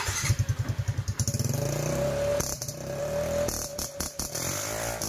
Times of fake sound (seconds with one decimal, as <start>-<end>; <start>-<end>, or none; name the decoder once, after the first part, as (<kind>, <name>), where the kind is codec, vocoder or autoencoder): 2.3-3.0 (vocoder, BigVGAN v2); 3.7-5.1